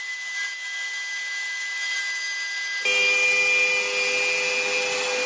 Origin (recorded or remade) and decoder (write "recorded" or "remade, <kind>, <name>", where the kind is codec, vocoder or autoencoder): recorded